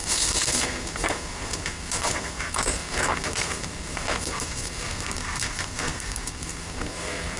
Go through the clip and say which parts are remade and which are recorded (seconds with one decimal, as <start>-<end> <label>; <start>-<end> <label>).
0.0-7.4 remade